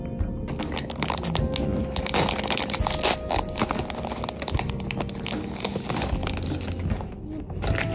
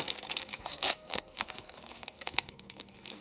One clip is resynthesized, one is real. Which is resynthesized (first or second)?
second